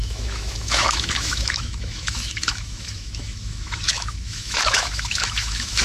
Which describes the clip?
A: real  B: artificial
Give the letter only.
B